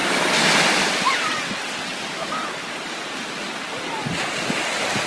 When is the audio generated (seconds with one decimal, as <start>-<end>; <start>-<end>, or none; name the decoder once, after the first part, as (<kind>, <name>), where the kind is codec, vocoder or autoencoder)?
1.3-1.9 (vocoder, WaveNeXt)